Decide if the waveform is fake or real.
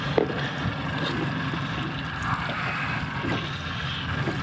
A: real